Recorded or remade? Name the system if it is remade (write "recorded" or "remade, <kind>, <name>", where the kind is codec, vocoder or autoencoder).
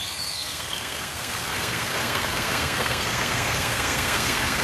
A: remade, codec, SNAC